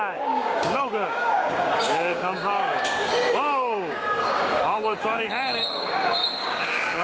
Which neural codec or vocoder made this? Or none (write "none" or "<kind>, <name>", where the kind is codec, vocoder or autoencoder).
codec, DAC